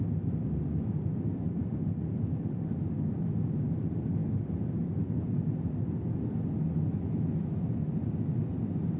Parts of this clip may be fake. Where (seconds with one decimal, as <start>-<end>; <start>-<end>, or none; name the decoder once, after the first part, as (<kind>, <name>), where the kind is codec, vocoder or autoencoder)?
none